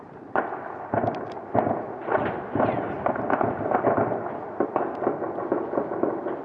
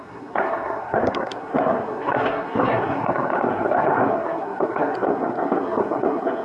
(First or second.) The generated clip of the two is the second